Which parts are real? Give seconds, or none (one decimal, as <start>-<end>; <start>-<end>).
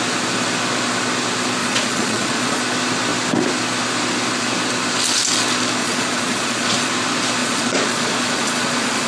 0.0-1.6; 2.6-5.8; 6.9-7.4